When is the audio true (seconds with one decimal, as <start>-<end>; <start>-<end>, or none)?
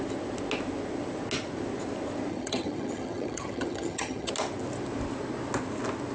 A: 0.0-2.3; 4.3-6.1